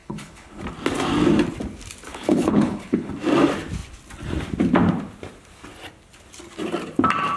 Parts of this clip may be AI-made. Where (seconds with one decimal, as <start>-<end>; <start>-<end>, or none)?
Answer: 0.0-0.6; 2.1-3.1

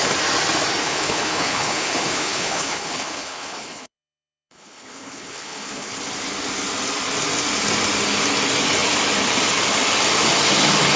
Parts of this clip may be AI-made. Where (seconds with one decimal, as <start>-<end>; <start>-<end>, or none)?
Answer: 0.8-6.0

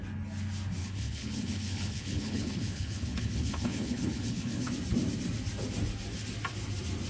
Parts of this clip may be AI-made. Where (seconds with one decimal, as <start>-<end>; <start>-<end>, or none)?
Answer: 0.8-4.7

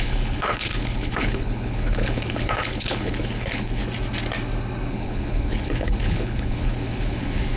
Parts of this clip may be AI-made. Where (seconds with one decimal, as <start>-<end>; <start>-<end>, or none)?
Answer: 0.0-3.8; 4.9-7.6

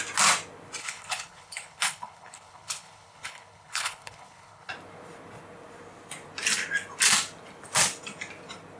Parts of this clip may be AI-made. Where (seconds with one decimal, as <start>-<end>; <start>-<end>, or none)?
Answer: 0.8-4.7

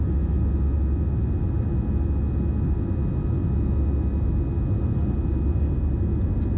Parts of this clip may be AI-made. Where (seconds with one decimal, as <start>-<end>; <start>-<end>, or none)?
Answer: none

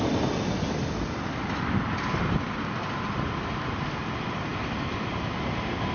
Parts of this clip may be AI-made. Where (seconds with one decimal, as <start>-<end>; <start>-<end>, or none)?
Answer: none